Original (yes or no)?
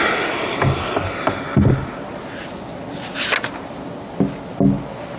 yes